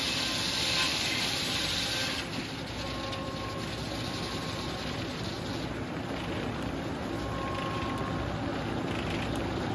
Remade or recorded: recorded